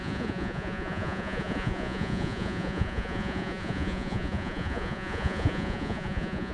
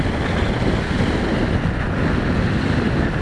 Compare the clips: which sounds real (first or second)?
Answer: second